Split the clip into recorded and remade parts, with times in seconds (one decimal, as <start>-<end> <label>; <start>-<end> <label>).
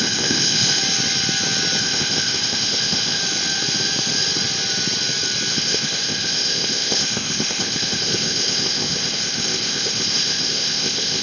0.0-0.8 remade; 0.8-1.8 recorded; 1.8-3.2 remade; 3.2-5.5 recorded; 5.5-11.2 remade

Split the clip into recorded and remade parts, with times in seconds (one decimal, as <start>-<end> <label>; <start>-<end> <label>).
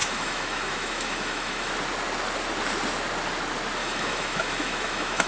0.0-1.7 remade; 1.7-3.8 recorded; 3.8-5.3 remade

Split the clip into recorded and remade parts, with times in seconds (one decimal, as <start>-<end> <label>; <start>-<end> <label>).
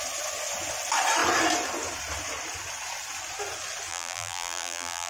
0.0-3.9 recorded; 3.9-5.1 remade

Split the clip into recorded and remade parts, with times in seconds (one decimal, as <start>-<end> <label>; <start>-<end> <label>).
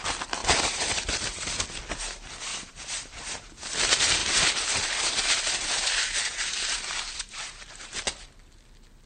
0.0-0.4 recorded; 0.4-1.5 remade; 1.5-2.5 recorded; 2.5-3.5 remade; 3.5-4.2 recorded; 4.2-8.0 remade; 8.0-9.1 recorded